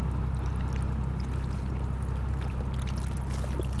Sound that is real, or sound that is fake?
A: real